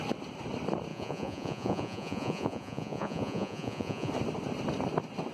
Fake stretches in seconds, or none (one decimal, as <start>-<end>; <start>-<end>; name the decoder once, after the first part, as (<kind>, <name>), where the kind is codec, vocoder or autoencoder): 0.9-4.1 (vocoder, Vocos)